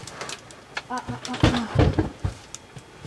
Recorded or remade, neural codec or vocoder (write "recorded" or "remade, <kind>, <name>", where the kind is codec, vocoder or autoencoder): recorded